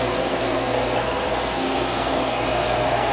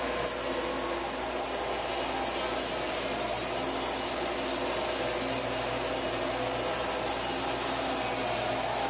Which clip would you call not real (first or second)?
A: first